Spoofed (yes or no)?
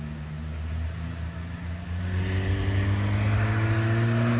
no